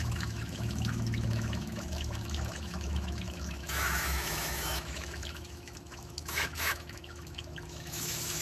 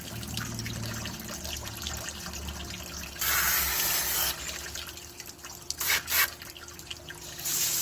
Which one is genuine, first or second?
second